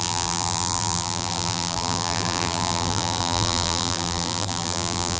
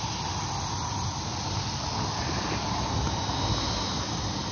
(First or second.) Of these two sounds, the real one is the second